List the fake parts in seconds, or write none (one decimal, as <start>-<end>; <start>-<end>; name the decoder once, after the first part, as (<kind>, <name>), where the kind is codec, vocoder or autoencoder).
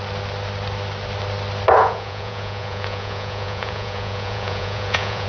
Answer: 1.8-5.3 (vocoder, Vocos)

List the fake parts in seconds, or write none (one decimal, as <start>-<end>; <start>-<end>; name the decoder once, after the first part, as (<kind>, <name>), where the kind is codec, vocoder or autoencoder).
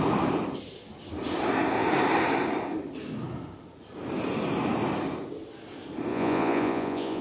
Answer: 6.1-7.2 (vocoder, Vocos)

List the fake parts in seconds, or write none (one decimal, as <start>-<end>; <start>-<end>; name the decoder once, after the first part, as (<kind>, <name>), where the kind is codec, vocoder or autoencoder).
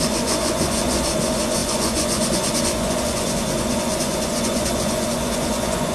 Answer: 0.0-5.9 (vocoder, Vocos)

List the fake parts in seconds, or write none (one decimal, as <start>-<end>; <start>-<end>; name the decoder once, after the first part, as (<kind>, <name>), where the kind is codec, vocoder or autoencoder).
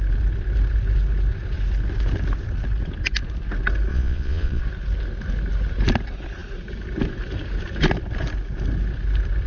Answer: 3.9-4.6 (vocoder, Vocos)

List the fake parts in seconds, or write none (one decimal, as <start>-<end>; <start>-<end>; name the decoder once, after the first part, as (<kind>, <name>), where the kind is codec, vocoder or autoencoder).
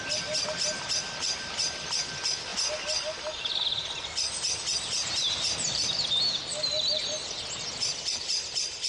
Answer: none